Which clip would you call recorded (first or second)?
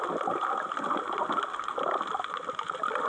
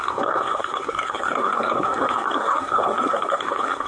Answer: first